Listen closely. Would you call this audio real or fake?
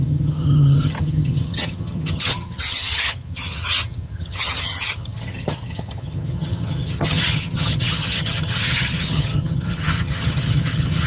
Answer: fake